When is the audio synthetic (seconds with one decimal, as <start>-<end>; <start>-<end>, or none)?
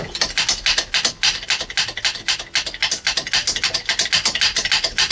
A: none